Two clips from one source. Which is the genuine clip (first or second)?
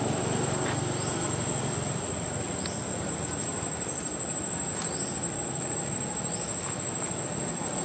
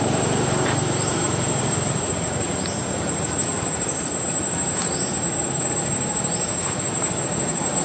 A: first